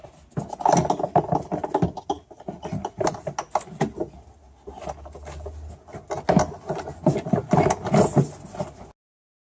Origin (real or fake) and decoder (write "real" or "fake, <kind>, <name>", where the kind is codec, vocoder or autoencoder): real